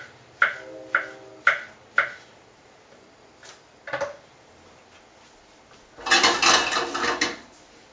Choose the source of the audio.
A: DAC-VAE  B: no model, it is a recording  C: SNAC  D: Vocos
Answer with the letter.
B